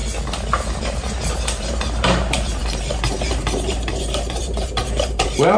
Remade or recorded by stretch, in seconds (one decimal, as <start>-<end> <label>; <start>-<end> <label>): 0.0-0.8 recorded; 0.8-5.6 remade